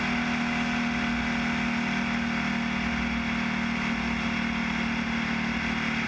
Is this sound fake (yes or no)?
no